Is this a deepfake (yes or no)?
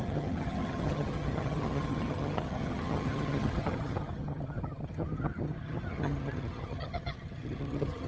yes